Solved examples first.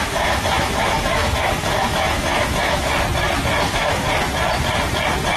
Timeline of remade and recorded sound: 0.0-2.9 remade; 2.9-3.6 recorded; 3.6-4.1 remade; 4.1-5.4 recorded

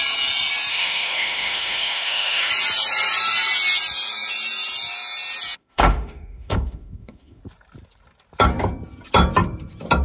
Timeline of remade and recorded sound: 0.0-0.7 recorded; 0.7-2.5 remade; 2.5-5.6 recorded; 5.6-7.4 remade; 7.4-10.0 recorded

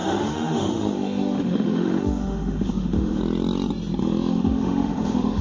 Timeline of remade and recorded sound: 0.0-3.2 remade; 3.2-4.0 recorded; 4.0-5.4 remade